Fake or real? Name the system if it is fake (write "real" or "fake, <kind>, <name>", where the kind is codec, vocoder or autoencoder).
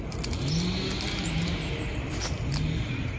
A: real